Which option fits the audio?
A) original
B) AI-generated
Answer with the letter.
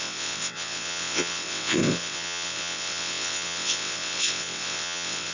B